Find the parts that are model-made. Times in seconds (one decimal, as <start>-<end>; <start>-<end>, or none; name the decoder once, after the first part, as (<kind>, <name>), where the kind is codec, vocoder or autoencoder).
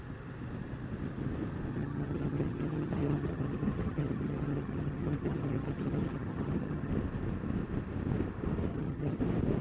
1.7-6.9 (vocoder, HiFi-GAN); 8.7-9.2